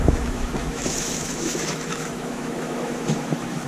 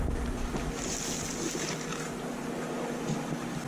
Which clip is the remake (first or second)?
first